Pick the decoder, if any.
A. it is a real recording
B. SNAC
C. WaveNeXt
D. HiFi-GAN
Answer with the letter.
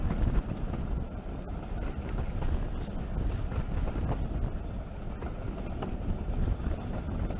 A